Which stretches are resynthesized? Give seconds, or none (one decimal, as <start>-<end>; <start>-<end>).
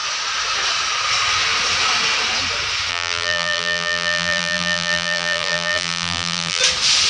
2.9-6.6